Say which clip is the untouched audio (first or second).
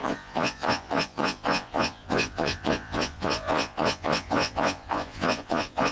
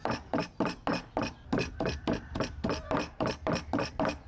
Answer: second